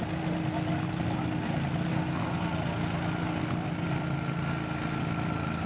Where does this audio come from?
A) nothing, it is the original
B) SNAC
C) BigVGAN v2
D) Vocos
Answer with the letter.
A